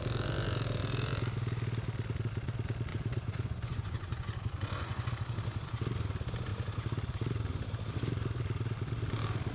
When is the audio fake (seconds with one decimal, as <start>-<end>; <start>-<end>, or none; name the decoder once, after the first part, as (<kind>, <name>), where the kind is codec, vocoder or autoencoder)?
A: 2.9-5.1 (vocoder, Vocos)